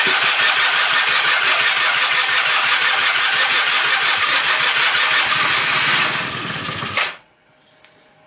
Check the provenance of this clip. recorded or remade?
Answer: recorded